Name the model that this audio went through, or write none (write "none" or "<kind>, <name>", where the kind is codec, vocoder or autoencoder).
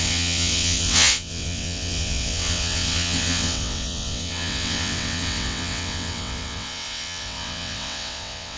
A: vocoder, WaveNeXt